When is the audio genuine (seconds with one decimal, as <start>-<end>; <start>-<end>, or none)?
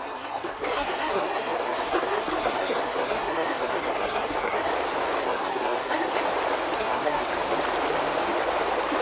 4.7-5.2; 6.2-6.8; 7.3-9.0